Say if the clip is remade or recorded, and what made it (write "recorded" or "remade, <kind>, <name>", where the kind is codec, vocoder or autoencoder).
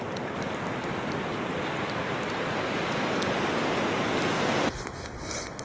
recorded